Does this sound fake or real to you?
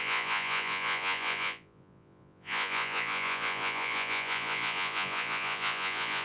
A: fake